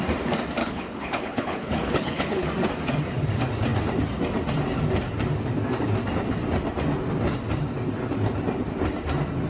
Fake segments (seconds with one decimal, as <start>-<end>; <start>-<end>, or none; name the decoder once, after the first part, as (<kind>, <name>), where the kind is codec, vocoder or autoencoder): 0.6-2.5 (codec, HILCodec)